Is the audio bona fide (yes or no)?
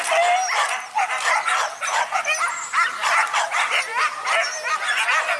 yes